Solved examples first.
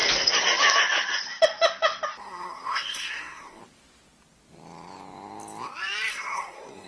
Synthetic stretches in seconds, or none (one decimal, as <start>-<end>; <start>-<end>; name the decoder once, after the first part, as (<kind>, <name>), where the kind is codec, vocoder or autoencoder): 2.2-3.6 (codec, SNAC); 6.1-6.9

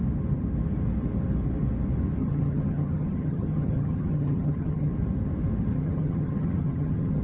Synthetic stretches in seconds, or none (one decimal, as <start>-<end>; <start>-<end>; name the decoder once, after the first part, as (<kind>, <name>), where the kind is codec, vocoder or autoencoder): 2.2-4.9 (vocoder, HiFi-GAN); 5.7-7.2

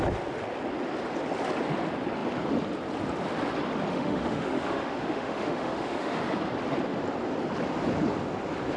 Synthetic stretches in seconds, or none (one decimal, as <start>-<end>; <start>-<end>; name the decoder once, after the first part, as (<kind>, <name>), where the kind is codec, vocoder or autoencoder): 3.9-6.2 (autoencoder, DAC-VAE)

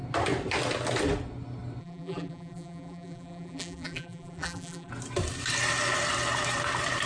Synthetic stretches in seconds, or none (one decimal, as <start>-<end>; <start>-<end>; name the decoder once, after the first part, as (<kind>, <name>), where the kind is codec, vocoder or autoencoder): 1.8-4.9 (vocoder, BigVGAN v2)

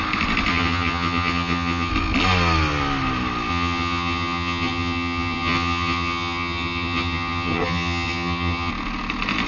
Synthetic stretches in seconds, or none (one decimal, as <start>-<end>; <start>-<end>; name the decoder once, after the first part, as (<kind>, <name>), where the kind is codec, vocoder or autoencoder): 0.5-1.9 (vocoder, HiFi-GAN); 3.5-8.7

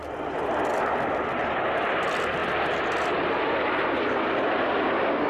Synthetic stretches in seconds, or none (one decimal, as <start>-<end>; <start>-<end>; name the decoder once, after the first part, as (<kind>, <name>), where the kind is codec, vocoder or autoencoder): none

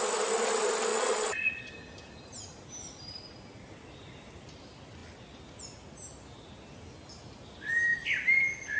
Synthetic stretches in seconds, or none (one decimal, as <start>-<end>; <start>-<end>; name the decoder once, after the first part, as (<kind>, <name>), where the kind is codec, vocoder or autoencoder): 0.9-1.7 (vocoder, Vocos)

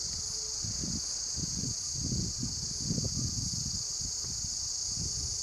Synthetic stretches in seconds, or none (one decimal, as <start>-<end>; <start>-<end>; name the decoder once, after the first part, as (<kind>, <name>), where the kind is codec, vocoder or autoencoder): none